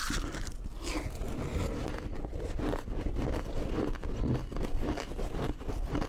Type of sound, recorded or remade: recorded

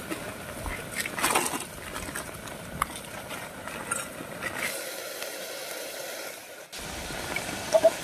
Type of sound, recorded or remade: recorded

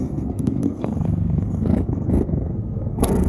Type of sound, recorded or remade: remade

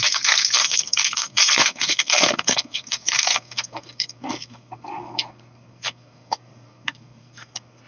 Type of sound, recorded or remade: remade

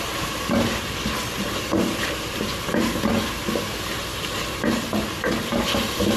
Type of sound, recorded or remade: recorded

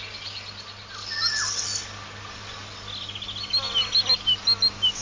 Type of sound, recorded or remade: recorded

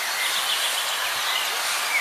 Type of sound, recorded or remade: recorded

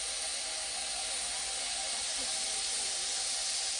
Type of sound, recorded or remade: recorded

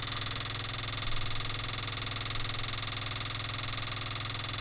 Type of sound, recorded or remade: recorded